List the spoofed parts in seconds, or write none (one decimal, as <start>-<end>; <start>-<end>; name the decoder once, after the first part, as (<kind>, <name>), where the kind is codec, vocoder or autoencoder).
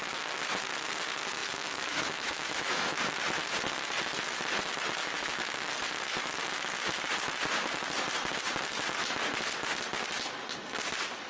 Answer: 1.4-3.0 (autoencoder, DAC-VAE); 5.0-5.7